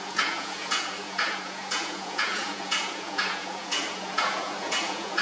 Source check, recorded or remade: remade